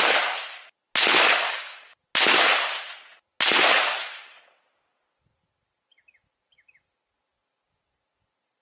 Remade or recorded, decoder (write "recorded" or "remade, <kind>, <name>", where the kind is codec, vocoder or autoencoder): recorded